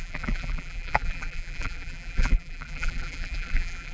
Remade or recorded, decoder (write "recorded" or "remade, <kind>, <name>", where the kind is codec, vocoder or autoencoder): remade, vocoder, BigVGAN v2